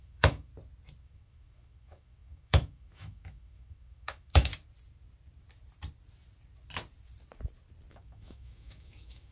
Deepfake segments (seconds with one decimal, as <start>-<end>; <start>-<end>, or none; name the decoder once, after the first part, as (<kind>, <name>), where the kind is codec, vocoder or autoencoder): 0.0-0.5 (autoencoder, DAC-VAE); 1.0-4.5; 7.9-9.3